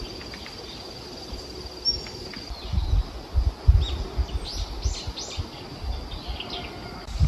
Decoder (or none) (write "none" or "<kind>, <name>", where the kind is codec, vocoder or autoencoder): none